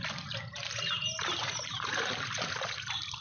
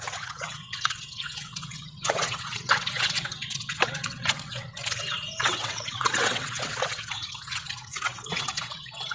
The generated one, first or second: second